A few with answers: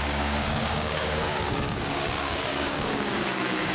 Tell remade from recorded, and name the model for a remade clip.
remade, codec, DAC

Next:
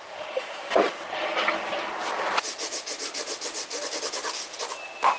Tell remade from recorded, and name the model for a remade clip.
recorded